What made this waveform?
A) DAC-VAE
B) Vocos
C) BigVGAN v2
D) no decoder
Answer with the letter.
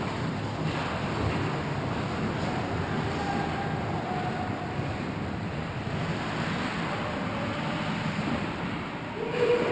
D